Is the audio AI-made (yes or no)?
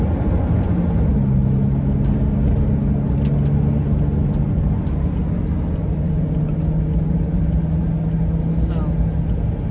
no